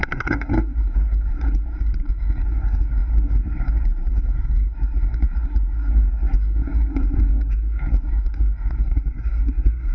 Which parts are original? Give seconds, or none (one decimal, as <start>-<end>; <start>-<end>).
none